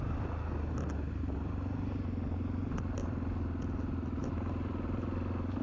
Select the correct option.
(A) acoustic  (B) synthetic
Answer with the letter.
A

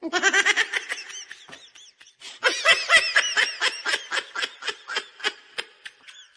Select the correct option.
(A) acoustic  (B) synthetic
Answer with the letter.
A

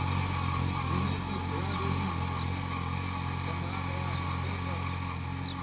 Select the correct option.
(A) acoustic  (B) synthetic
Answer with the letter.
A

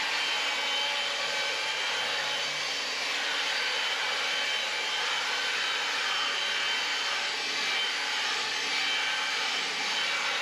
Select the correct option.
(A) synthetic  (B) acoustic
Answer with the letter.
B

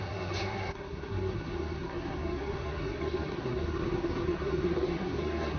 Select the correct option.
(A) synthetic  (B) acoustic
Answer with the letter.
A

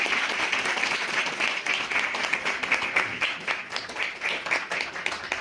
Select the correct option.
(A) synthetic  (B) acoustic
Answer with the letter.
B